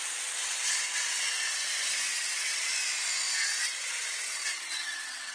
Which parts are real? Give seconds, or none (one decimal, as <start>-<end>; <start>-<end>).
2.7-3.3